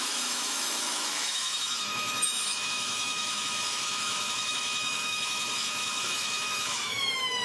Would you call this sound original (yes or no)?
no